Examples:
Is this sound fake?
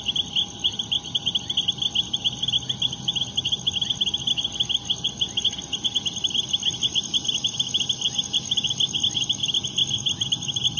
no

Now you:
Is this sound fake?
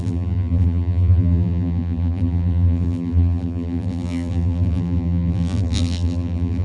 yes